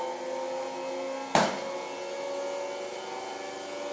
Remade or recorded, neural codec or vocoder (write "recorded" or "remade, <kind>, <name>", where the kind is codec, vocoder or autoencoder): recorded